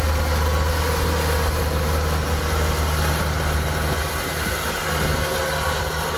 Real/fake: real